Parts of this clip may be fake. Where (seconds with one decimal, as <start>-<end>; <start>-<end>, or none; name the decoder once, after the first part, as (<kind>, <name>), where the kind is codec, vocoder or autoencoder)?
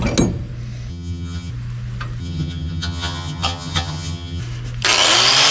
0.9-1.5 (vocoder, HiFi-GAN); 2.2-4.4